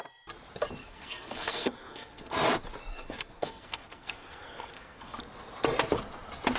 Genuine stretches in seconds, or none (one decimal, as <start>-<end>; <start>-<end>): 0.0-0.8; 2.3-2.9; 5.2-6.6